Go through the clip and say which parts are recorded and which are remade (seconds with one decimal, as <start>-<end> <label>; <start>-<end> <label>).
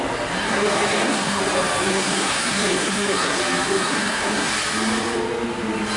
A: 0.0-0.4 recorded; 0.4-1.4 remade; 1.4-1.9 recorded; 1.9-3.4 remade; 3.4-3.8 recorded; 3.8-4.5 remade; 4.5-6.0 recorded